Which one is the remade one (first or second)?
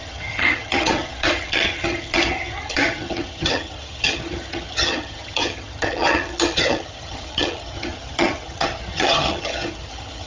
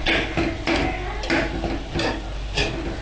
first